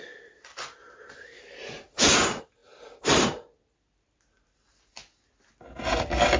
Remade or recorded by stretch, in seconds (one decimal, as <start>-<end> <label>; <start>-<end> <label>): 0.0-0.8 recorded; 0.8-2.0 remade; 2.0-6.4 recorded